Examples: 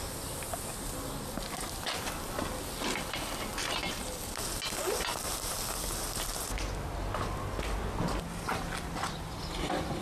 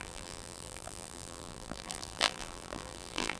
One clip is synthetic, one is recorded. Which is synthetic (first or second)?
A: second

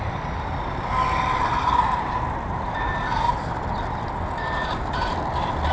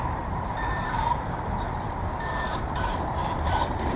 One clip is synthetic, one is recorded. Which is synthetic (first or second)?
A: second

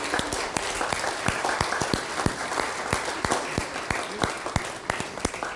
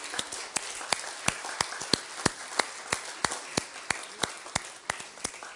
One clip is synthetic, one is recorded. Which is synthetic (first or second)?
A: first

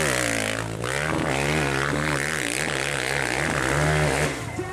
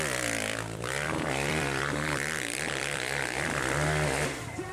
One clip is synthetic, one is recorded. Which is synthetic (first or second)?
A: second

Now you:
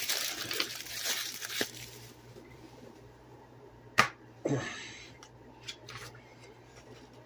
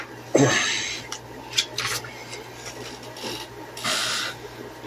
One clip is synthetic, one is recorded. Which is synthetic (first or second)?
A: first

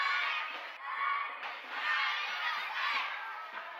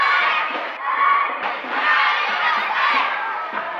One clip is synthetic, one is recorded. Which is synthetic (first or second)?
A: second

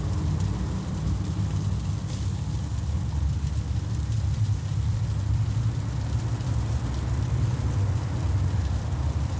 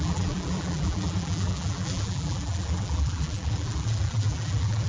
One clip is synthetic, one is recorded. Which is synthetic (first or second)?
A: second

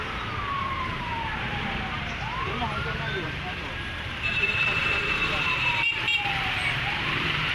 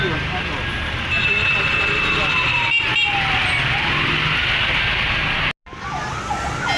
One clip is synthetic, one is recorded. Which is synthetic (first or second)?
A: first